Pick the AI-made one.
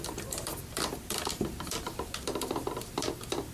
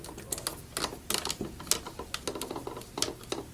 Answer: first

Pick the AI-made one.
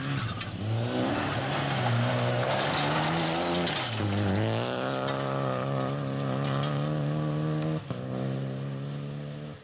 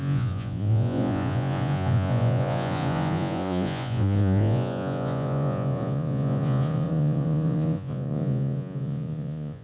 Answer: second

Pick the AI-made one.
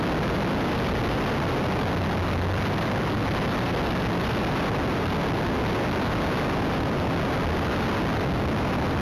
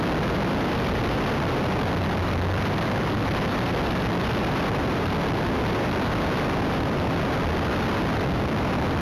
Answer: second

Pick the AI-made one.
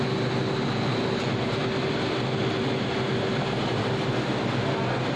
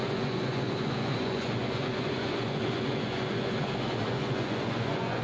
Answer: second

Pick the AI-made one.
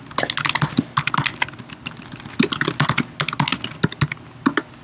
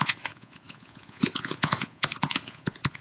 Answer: second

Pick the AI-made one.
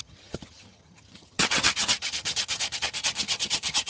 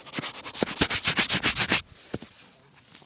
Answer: first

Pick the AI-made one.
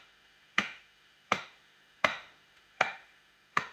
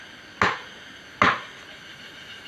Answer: first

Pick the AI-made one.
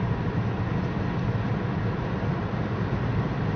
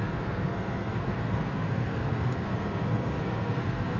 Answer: second